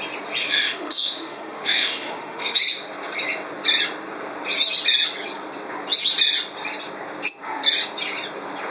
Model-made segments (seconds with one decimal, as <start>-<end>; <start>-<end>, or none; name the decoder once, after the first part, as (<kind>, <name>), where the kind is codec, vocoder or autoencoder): 0.4-2.6 (autoencoder, DAC-VAE)